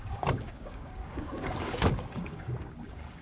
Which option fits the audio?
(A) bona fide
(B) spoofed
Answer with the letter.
B